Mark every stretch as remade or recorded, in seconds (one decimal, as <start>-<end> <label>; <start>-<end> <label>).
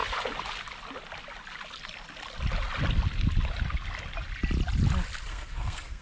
0.0-5.3 recorded; 5.3-6.0 remade